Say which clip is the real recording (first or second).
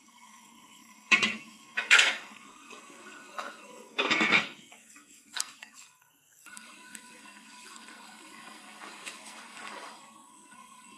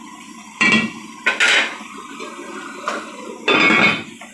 second